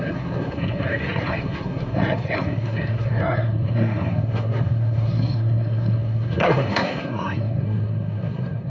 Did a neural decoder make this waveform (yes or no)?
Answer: yes